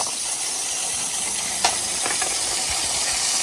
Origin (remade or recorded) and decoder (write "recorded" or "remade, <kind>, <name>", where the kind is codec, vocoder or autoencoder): recorded